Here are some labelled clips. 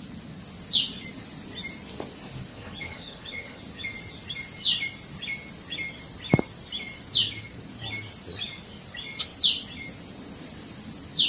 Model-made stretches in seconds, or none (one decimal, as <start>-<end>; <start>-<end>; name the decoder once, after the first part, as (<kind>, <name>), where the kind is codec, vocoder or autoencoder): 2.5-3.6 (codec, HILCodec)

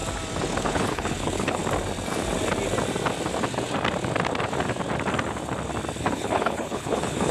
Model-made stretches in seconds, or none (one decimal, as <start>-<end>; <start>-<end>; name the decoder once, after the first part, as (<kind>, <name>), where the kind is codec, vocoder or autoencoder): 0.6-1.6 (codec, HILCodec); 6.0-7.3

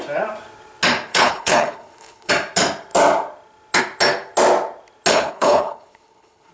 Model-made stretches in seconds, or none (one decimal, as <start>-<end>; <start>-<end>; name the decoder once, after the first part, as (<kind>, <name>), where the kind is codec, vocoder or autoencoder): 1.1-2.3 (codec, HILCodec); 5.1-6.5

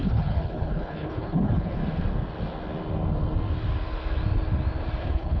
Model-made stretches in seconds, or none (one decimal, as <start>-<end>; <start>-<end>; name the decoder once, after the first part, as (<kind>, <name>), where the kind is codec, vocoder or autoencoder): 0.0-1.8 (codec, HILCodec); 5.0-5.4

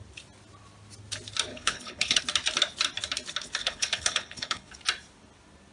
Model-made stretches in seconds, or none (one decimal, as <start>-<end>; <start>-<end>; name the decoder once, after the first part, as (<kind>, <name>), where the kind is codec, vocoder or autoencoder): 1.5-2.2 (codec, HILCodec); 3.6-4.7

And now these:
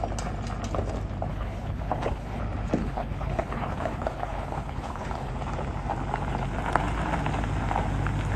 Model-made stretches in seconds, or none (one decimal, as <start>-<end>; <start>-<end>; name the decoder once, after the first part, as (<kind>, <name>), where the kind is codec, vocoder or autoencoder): 1.3-2.4 (codec, HILCodec); 2.8-5.3

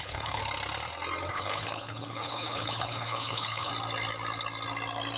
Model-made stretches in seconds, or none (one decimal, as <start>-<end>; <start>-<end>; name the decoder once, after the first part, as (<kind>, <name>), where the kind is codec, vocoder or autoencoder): 0.0-0.4 (codec, HILCodec); 1.3-3.7

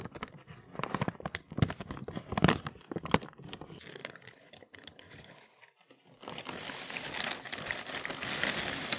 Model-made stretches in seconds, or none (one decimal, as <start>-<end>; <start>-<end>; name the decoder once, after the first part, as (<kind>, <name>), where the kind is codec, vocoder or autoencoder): 4.0-5.6 (codec, HILCodec)